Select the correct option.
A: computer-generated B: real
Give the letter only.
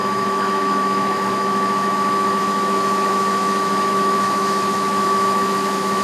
A